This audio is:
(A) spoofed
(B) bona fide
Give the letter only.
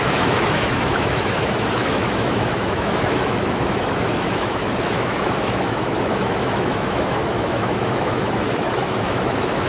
A